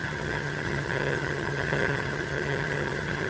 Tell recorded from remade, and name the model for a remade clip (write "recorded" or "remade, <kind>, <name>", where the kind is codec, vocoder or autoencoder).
remade, vocoder, HiFi-GAN